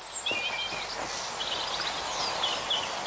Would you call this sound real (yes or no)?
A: yes